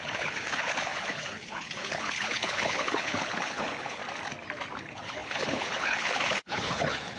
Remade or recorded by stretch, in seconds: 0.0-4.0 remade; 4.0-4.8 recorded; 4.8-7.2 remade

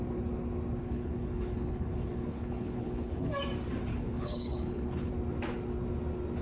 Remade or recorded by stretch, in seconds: 0.0-0.8 recorded; 0.8-3.3 remade; 3.3-3.9 recorded; 3.9-5.1 remade; 5.1-6.4 recorded

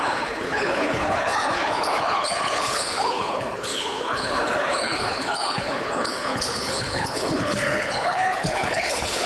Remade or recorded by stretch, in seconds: 0.0-9.3 remade